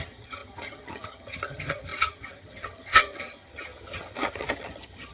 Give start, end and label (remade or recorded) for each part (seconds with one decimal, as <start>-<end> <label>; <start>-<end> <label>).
0.0-5.1 remade